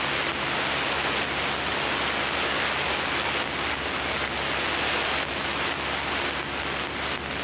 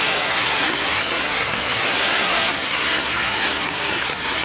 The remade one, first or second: second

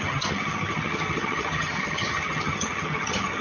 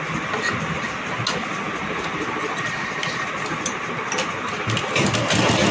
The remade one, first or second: first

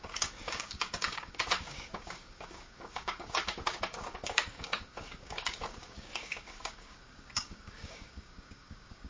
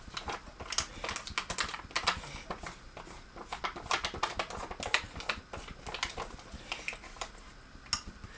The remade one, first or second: first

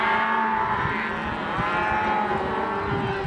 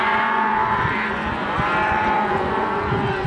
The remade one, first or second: second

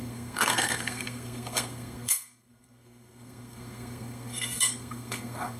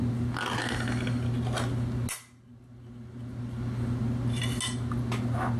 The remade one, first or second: first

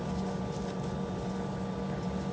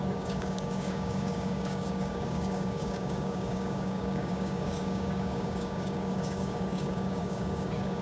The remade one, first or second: second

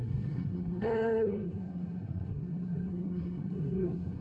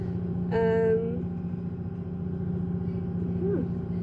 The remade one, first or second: first